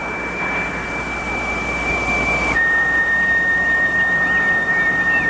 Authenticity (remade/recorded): recorded